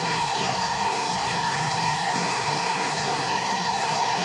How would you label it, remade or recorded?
remade